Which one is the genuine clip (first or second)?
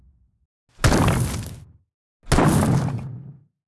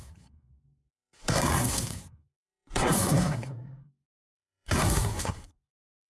first